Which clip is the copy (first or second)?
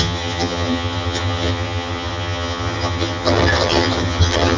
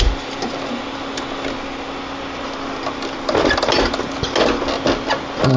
first